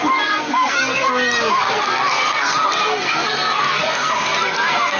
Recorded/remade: remade